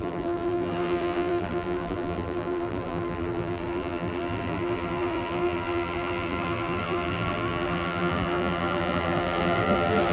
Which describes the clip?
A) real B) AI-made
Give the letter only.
B